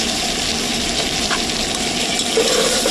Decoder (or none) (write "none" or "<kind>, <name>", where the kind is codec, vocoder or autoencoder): none